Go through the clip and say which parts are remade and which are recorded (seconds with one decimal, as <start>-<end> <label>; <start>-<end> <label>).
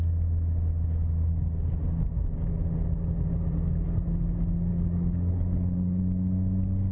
0.0-4.7 recorded; 4.7-6.0 remade; 6.0-6.9 recorded